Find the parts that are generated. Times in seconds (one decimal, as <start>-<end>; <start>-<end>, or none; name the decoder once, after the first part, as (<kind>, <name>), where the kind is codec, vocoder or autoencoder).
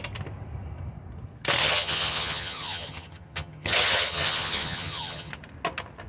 1.6-5.3 (vocoder, HiFi-GAN)